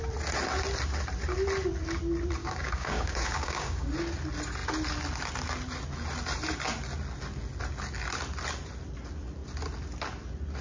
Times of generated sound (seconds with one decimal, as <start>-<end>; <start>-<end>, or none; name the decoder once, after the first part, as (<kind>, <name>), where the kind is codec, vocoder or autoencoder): 2.4-3.9 (codec, DAC)